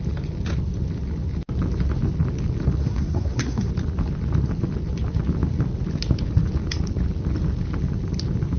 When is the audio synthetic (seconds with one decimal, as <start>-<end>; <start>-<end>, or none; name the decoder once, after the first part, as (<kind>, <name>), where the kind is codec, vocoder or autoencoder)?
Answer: 2.8-3.7 (codec, SNAC)